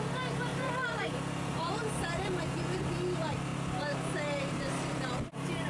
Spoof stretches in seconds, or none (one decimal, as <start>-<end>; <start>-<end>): none